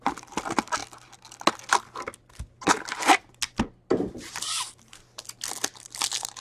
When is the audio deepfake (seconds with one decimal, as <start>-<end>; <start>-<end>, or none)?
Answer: none